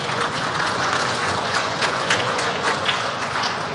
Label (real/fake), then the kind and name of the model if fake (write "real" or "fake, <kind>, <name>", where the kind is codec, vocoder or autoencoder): fake, vocoder, Vocos